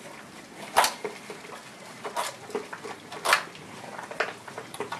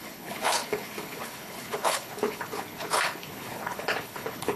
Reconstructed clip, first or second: second